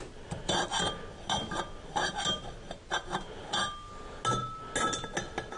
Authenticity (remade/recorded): recorded